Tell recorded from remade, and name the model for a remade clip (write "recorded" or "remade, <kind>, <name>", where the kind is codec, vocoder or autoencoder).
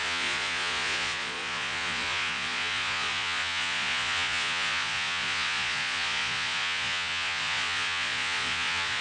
remade, vocoder, Vocos